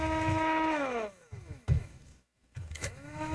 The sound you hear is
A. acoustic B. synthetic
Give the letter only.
B